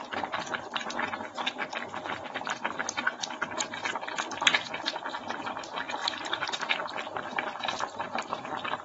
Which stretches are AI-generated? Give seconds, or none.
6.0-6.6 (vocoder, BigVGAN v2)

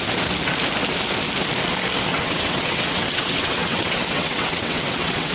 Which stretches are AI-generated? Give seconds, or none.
2.1-5.3 (vocoder, WaveNeXt)

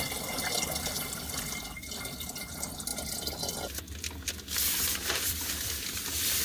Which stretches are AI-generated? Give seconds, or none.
0.0-2.9 (vocoder, BigVGAN v2); 4.6-6.4

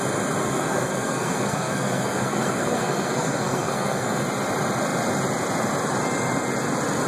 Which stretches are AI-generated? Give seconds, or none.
0.4-4.2 (codec, SNAC)

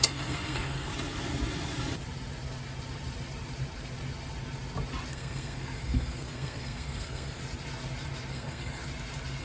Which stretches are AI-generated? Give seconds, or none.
0.0-0.9 (codec, SNAC); 5.1-7.4; 8.3-8.8

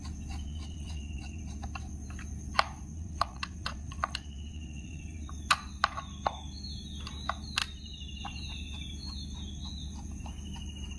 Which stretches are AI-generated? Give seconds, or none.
0.4-1.4 (vocoder, WaveNeXt); 2.9-5.3

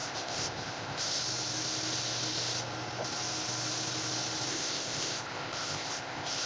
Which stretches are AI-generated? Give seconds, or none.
0.0-1.2 (codec, ZipCodec); 4.5-6.5

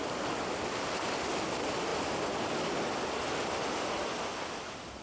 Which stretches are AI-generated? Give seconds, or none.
none